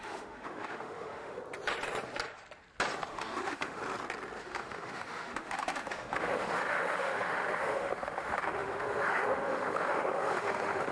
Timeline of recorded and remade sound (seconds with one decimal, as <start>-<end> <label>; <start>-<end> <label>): 0.0-1.4 remade; 1.4-3.1 recorded; 3.1-3.8 remade; 3.8-4.4 recorded; 4.4-10.9 remade